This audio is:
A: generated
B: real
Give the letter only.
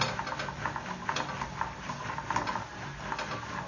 B